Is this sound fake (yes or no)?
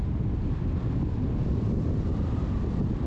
no